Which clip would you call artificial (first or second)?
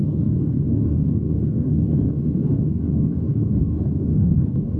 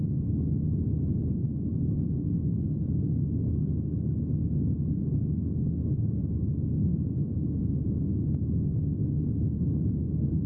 first